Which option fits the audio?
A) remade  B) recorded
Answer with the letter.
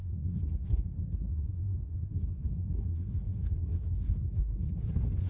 A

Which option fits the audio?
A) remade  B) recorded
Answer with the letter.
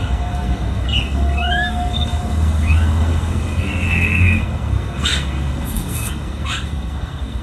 A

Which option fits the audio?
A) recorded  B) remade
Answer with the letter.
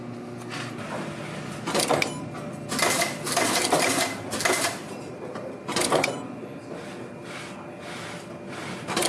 A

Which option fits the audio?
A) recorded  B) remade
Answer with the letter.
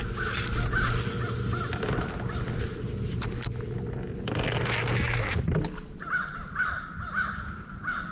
A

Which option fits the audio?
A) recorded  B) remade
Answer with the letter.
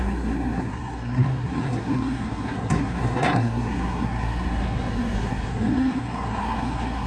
B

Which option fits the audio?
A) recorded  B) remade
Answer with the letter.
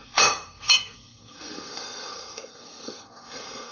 B